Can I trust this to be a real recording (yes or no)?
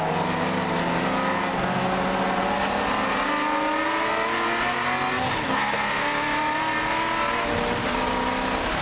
yes